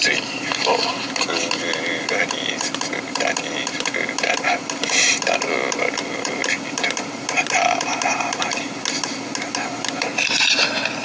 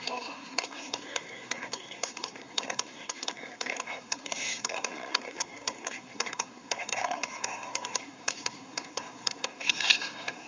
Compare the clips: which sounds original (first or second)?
first